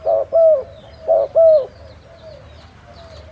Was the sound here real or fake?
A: real